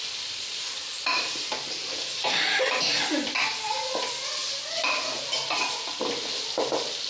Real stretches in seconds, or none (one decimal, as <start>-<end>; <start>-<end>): 0.0-1.1; 2.3-7.1